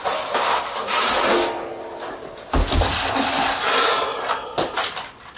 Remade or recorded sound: recorded